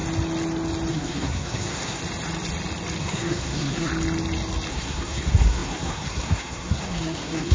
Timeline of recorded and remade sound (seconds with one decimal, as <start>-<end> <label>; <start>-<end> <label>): 0.0-0.9 recorded; 0.9-2.0 remade; 2.0-3.0 recorded; 3.0-3.9 remade; 3.9-4.7 recorded; 4.7-7.5 remade